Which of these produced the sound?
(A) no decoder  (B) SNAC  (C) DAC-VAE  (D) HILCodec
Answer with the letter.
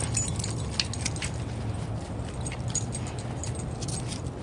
A